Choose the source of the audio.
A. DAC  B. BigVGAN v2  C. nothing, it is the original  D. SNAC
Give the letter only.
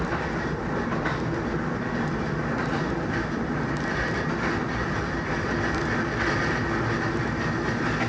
C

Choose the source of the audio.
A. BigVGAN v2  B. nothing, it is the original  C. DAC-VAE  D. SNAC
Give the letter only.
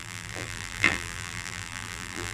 A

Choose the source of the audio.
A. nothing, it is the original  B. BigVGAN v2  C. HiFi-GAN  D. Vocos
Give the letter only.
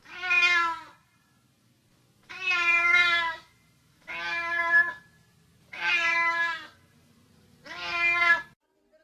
A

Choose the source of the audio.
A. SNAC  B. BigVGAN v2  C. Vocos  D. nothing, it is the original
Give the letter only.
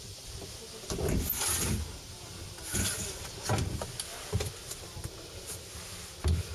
D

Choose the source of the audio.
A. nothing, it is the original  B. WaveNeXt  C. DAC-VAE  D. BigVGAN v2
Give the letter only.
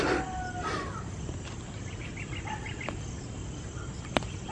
A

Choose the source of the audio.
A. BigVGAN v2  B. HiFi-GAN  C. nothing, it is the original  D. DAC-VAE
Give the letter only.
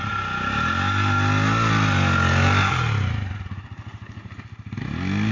C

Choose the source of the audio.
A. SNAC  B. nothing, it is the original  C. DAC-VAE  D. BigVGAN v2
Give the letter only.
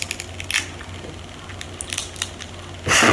B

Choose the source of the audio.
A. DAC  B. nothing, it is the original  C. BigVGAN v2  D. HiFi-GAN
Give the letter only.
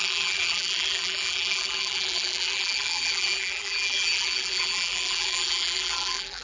C